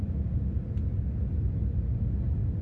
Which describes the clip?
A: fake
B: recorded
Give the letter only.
B